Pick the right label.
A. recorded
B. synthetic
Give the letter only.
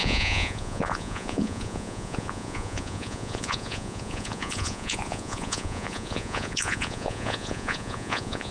B